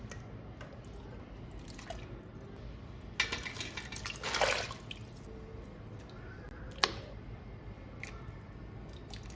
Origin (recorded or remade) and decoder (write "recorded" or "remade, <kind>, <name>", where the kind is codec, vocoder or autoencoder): recorded